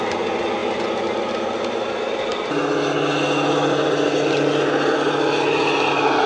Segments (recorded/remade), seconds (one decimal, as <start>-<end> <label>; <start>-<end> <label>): 0.0-6.3 recorded

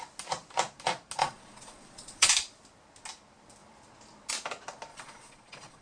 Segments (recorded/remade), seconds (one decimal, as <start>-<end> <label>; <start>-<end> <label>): 0.0-1.2 recorded; 1.2-2.3 remade; 2.3-4.9 recorded; 4.9-5.8 remade

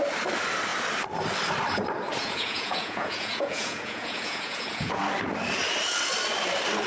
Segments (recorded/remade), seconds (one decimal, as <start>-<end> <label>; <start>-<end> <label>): 0.0-2.2 recorded; 2.2-5.0 remade; 5.0-6.9 recorded

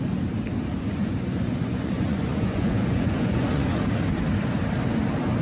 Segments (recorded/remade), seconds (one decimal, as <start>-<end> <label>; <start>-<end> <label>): 0.0-0.7 recorded; 0.7-3.9 remade; 3.9-5.4 recorded

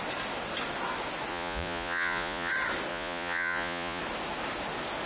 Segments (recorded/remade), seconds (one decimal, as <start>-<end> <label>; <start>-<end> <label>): 0.0-1.3 recorded; 1.3-2.5 remade; 2.5-2.9 recorded; 2.9-4.0 remade; 4.0-5.1 recorded

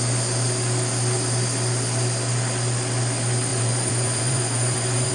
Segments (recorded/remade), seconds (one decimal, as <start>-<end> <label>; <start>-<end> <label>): 0.0-3.5 recorded; 3.5-5.1 remade

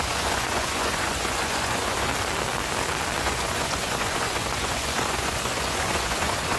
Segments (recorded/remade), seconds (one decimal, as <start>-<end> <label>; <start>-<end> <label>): 0.0-2.1 remade; 2.1-3.2 recorded; 3.2-6.6 remade